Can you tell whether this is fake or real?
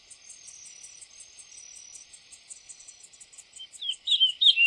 real